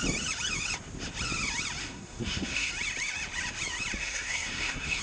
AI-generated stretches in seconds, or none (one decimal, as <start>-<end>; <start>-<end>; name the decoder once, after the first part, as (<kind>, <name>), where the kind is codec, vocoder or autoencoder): 1.8-2.7 (codec, SNAC); 4.0-5.0

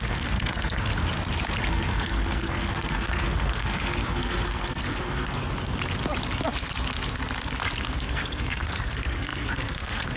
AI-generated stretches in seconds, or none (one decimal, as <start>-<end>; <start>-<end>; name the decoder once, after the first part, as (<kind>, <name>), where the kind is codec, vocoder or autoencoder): 0.0-0.9 (codec, SNAC); 1.7-5.4; 7.8-10.2

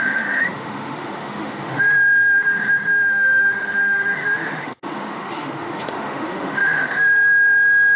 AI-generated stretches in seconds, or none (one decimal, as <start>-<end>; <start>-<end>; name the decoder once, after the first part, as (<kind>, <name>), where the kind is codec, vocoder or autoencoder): 0.0-8.0 (autoencoder, DAC-VAE)

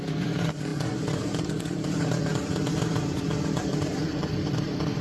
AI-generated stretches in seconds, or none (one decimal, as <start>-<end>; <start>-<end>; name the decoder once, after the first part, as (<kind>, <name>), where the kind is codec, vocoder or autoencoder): 0.0-0.7 (vocoder, BigVGAN v2); 1.6-5.0